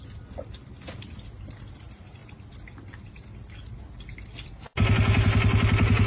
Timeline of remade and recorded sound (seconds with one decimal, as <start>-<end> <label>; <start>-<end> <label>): 0.0-6.1 recorded